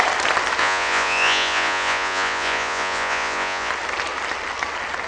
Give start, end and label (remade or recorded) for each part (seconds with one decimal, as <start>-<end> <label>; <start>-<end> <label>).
0.0-0.6 recorded; 0.6-3.7 remade; 3.7-5.1 recorded